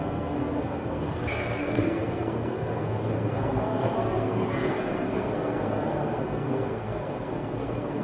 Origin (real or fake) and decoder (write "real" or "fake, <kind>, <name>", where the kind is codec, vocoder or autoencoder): fake, codec, SNAC